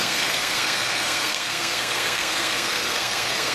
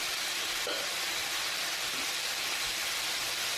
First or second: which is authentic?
second